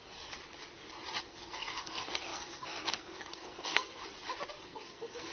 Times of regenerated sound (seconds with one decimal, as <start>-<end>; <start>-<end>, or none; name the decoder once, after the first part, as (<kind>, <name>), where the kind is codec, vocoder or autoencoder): 0.0-0.4 (codec, SNAC); 1.2-4.0; 4.5-5.3